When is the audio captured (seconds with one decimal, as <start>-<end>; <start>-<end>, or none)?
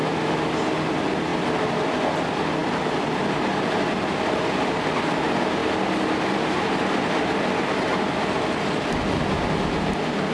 0.0-1.3; 1.9-7.9; 9.5-10.3